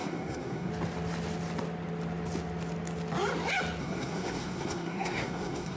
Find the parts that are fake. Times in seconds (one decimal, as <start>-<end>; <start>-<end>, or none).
0.0-0.7; 3.8-5.8